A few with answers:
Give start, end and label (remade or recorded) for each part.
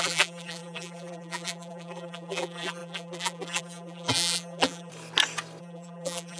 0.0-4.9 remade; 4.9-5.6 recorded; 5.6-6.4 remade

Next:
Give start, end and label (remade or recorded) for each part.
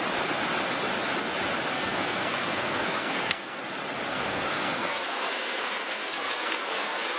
0.0-1.7 recorded; 1.7-3.6 remade; 3.6-4.1 recorded; 4.1-7.2 remade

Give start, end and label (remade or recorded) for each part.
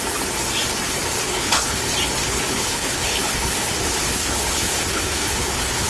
0.0-1.2 recorded; 1.2-1.8 remade; 1.8-2.2 recorded; 2.2-5.9 remade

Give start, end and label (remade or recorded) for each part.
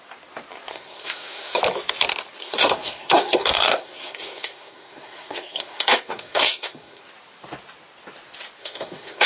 0.0-0.7 recorded; 0.7-1.6 remade; 1.6-2.4 recorded; 2.4-7.0 remade; 7.0-8.6 recorded; 8.6-9.3 remade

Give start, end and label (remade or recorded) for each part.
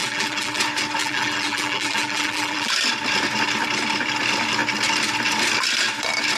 0.0-0.6 remade; 0.6-1.0 recorded; 1.0-2.7 remade; 2.7-6.4 recorded